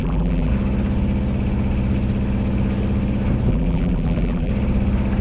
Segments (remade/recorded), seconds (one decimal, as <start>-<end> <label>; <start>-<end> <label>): 0.0-0.5 remade; 0.5-3.5 recorded; 3.5-4.5 remade; 4.5-5.2 recorded